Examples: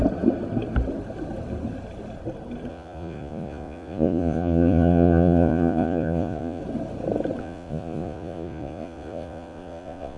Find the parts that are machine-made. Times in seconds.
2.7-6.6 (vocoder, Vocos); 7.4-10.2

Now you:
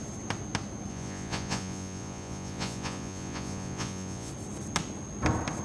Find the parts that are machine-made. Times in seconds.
0.9-4.3 (vocoder, Vocos)

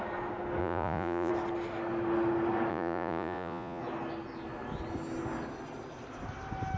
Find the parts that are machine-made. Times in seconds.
0.6-1.3 (vocoder, Vocos); 2.7-3.8

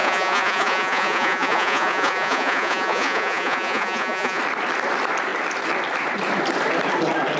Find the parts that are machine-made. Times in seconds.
0.0-4.4 (vocoder, Vocos)

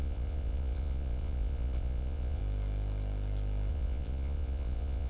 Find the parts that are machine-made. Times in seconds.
0.0-2.4 (vocoder, Vocos); 3.7-5.1

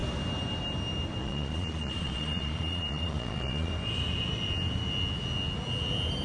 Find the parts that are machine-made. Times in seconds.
1.2-3.7 (vocoder, Vocos)

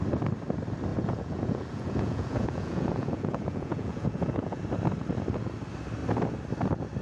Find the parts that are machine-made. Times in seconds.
0.9-4.6 (vocoder, Vocos)